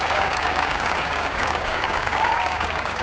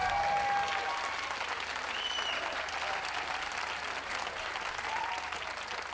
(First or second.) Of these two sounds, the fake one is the first